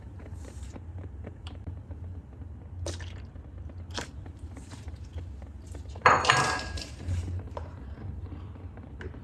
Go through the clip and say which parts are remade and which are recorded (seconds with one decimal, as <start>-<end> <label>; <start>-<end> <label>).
0.0-2.2 remade; 2.2-3.6 recorded; 3.6-5.1 remade; 5.1-6.0 recorded; 6.0-9.2 remade